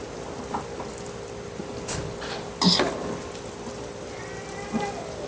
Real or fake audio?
real